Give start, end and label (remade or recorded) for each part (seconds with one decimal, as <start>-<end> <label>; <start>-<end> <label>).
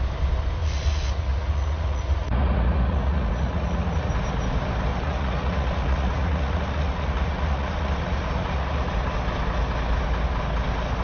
0.0-0.6 recorded; 0.6-4.1 remade; 4.1-4.9 recorded; 4.9-8.9 remade; 8.9-11.0 recorded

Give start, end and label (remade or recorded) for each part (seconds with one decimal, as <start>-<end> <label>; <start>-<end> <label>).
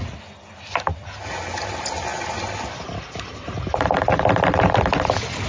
0.0-5.5 recorded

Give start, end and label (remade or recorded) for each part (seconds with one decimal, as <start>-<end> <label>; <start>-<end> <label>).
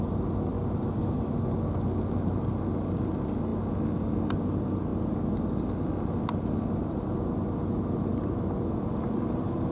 0.0-9.7 recorded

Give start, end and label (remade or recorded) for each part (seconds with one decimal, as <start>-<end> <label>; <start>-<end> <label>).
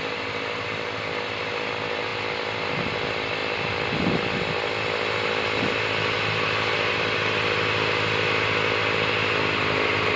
0.0-10.2 recorded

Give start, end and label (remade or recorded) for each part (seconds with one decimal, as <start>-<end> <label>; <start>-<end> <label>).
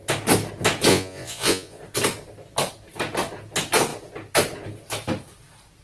0.0-0.9 recorded; 0.9-1.8 remade; 1.8-5.8 recorded